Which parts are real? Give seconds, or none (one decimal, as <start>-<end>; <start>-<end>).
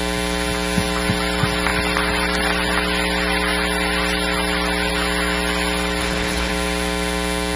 0.0-6.0; 6.5-7.6